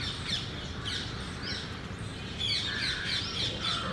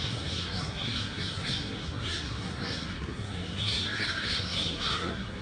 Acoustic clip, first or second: first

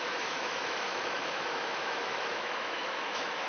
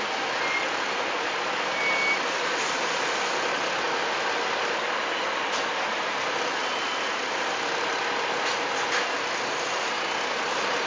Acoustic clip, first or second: second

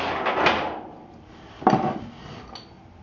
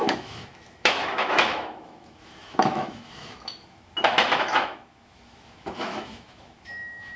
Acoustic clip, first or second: first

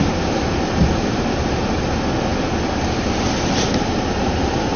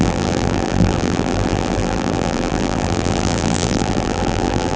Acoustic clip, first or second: first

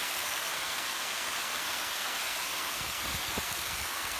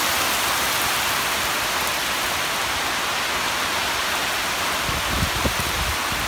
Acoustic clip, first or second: second